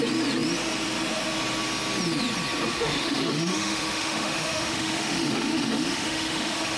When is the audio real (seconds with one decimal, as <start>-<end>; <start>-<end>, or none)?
0.0-2.7